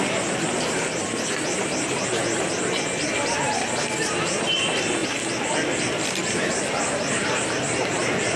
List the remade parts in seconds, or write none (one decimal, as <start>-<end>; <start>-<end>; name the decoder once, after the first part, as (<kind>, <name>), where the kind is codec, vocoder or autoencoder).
none